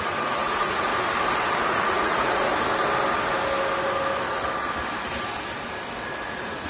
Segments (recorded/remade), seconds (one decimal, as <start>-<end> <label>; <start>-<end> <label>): 0.0-0.9 remade; 0.9-1.6 recorded; 1.6-2.5 remade; 2.5-6.3 recorded; 6.3-6.7 remade